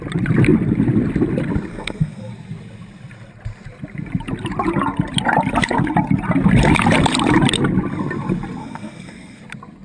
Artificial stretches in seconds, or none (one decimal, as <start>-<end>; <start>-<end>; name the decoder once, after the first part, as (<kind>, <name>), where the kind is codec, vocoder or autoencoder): 1.7-2.3 (codec, SNAC); 8.6-9.4